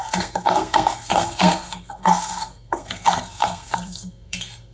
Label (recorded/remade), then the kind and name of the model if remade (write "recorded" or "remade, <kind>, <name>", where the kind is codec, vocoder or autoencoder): remade, codec, SNAC